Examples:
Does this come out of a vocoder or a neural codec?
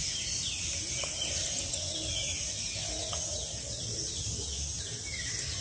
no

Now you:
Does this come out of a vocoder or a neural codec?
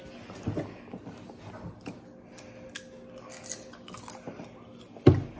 no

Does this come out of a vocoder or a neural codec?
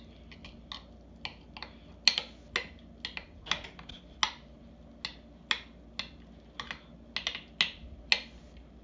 no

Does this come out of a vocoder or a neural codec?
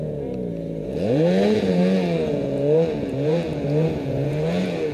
yes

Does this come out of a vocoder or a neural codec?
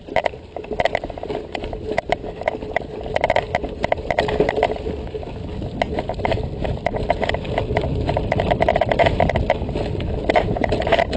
no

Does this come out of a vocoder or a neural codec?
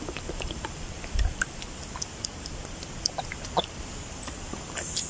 no